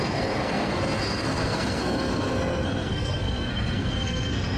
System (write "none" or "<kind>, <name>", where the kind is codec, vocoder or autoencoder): codec, SNAC